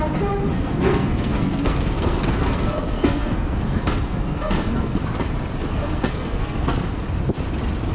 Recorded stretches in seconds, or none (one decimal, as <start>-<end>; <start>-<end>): 0.0-0.5; 5.0-5.7; 7.0-7.9